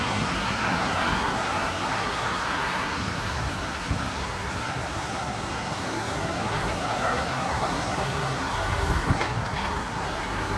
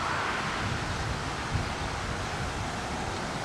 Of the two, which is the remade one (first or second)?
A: first